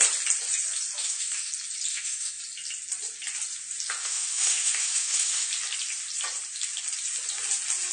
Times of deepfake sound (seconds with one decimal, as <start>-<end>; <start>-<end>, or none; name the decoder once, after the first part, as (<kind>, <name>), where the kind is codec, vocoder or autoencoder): 1.0-1.5 (autoencoder, DAC-VAE); 1.9-2.4; 4.0-5.5